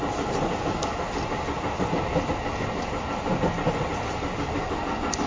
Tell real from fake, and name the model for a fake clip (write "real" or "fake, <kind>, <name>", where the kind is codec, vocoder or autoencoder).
real